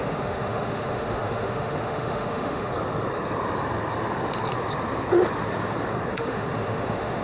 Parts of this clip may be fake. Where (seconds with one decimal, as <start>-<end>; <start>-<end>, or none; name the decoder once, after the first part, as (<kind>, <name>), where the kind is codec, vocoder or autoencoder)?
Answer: 0.0-2.7 (autoencoder, DAC-VAE); 6.1-7.2